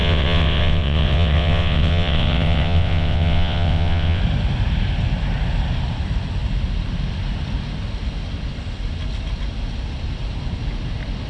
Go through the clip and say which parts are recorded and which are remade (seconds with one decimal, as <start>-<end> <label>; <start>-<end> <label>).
0.0-4.2 remade; 4.2-11.3 recorded